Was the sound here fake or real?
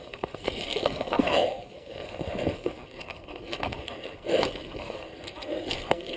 fake